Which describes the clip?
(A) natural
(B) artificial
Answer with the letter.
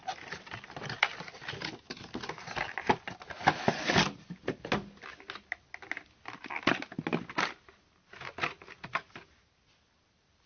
A